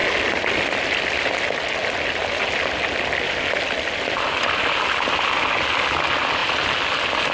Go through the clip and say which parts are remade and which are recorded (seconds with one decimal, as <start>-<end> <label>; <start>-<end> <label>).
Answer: 0.0-7.3 recorded